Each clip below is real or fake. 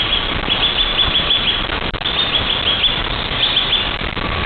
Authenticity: real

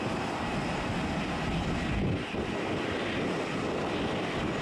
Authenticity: real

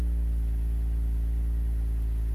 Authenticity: real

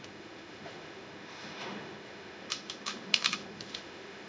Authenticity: fake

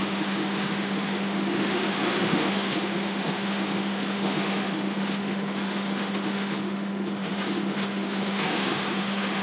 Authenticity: fake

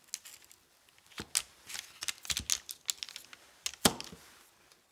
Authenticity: real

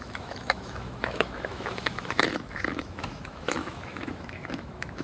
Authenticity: fake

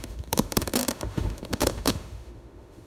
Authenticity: fake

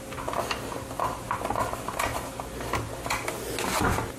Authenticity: real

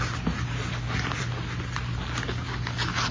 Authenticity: real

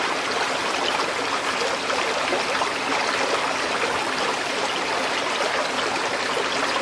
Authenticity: real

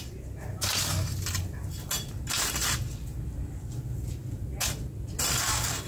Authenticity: real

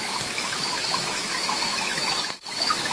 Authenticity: fake